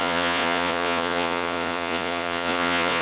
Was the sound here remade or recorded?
remade